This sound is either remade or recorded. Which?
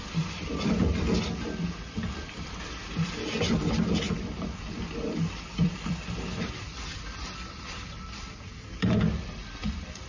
remade